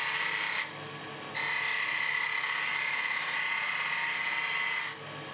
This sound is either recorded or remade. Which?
recorded